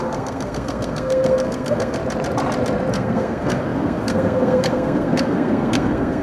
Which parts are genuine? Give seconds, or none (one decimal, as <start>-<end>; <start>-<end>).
2.0-2.9